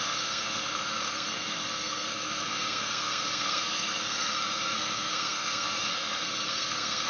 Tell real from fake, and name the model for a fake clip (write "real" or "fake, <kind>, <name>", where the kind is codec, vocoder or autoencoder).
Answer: fake, codec, SNAC